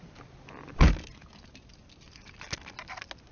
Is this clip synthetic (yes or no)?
no